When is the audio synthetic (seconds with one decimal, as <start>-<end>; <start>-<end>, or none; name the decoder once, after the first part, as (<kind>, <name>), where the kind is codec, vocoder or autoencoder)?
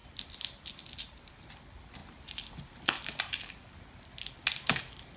0.0-0.6 (vocoder, BigVGAN v2); 2.0-3.5